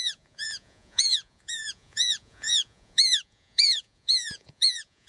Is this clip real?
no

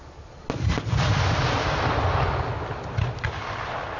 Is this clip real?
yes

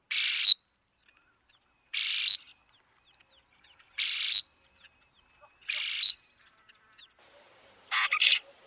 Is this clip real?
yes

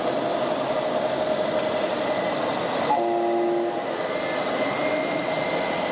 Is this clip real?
yes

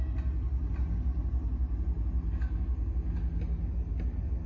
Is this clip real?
yes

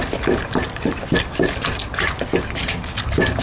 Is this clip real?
yes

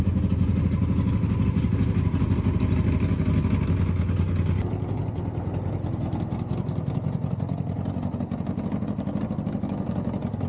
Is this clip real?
yes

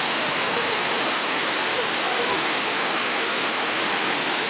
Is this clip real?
no